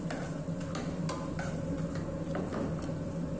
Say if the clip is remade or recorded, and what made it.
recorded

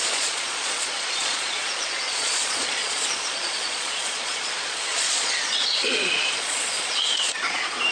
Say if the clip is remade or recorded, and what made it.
remade, vocoder, Vocos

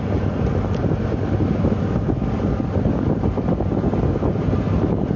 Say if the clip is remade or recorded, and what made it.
recorded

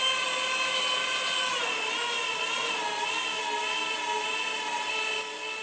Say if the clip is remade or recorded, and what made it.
recorded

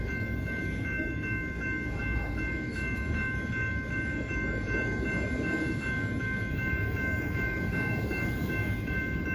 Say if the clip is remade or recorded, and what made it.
remade, codec, DAC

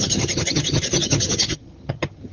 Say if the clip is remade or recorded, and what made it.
remade, vocoder, HiFi-GAN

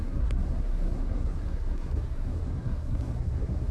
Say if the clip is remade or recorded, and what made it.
remade, codec, SNAC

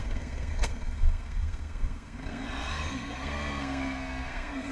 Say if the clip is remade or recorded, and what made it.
remade, codec, SNAC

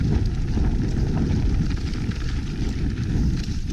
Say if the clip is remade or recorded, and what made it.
recorded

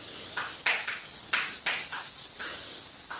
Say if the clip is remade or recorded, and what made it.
recorded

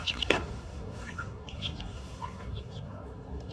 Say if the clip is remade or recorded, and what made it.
remade, codec, SNAC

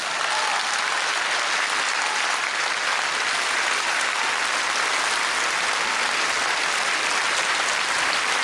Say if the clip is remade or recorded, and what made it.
recorded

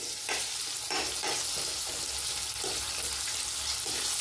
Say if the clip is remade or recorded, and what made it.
recorded